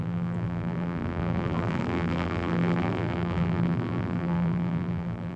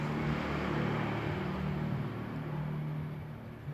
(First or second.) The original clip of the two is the second